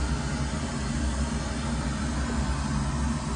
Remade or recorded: recorded